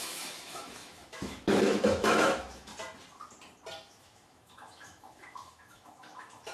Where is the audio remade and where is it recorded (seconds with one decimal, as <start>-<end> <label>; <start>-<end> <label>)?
0.0-2.7 remade; 2.7-3.9 recorded; 3.9-6.5 remade